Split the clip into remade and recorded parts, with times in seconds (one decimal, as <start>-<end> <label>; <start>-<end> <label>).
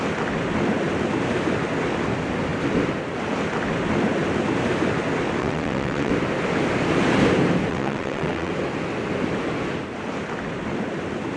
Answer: 0.0-5.4 recorded; 5.4-6.1 remade; 6.1-7.7 recorded; 7.7-8.5 remade; 8.5-11.4 recorded